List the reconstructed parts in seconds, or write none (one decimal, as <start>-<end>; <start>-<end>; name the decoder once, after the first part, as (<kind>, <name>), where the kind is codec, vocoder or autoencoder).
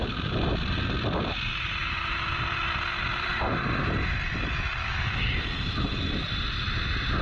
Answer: 1.8-2.3 (autoencoder, DAC-VAE); 4.8-5.3